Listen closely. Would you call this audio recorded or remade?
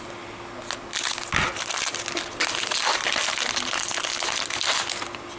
recorded